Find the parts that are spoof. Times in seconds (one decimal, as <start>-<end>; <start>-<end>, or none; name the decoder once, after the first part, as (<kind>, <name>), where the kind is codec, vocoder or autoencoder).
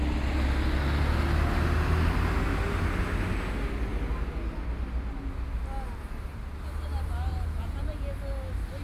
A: 7.3-8.1 (vocoder, Vocos)